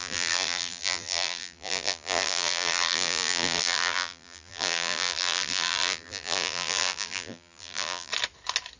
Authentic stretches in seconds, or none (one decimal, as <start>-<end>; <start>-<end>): 8.1-8.8